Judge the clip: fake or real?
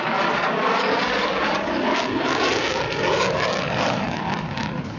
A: fake